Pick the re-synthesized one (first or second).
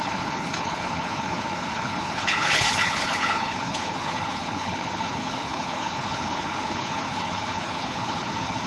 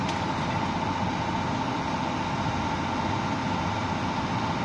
first